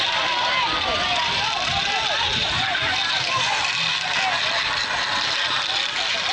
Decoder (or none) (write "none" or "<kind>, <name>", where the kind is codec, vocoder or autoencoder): none